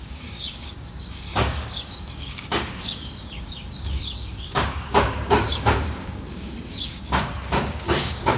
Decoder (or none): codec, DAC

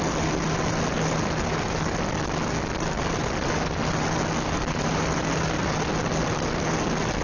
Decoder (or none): none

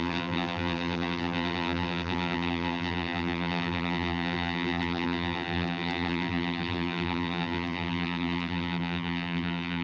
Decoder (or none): vocoder, BigVGAN v2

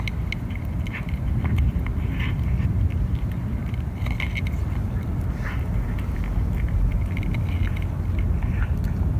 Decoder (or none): none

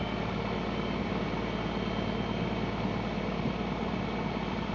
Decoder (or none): none